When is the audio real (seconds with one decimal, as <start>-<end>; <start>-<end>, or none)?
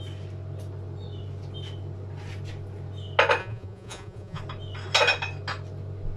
0.0-3.4; 4.4-6.2